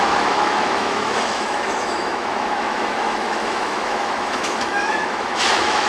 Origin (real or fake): fake